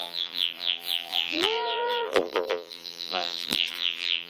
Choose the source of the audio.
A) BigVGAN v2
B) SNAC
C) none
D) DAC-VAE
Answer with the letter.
A